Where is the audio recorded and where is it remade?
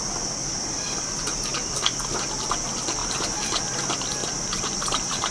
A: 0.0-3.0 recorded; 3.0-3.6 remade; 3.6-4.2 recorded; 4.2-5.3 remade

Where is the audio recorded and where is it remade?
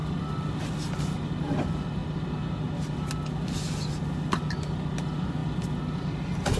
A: 0.0-6.6 recorded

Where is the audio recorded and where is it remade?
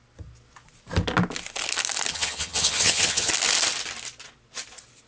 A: 0.0-2.1 recorded; 2.1-3.3 remade; 3.3-5.1 recorded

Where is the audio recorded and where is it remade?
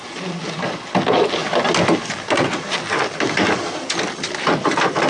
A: 0.0-5.1 recorded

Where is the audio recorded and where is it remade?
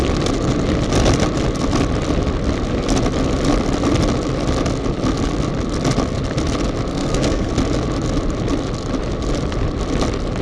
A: 0.0-6.9 recorded; 6.9-7.5 remade; 7.5-10.4 recorded